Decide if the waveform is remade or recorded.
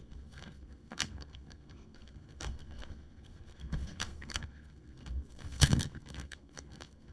remade